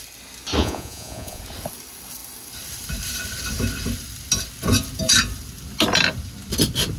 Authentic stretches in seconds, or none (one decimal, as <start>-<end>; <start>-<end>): 0.0-0.6; 1.4-7.0